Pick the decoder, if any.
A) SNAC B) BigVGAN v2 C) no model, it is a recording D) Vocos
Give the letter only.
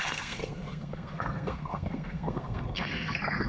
A